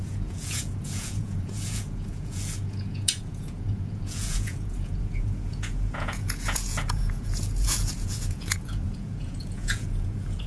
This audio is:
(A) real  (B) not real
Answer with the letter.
B